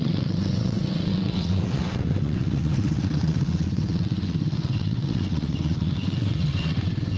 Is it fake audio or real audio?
fake